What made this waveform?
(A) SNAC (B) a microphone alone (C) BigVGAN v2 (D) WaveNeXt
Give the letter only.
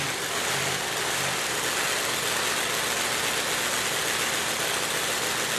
B